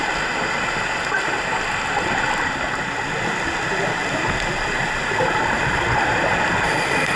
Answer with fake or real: real